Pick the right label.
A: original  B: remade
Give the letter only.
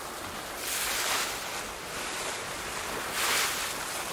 A